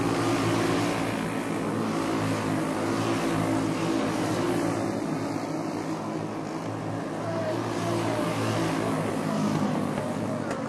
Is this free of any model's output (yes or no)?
yes